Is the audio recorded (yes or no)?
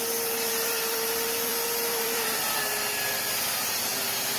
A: no